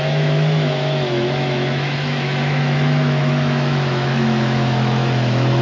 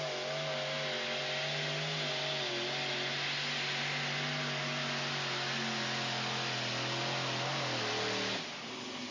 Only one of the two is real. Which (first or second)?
second